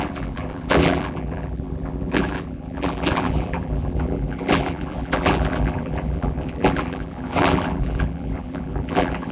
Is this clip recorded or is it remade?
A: remade